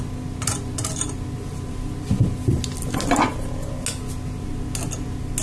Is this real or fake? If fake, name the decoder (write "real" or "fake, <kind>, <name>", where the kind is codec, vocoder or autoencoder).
real